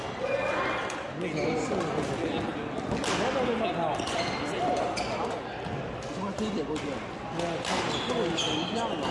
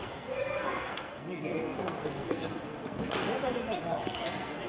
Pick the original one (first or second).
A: first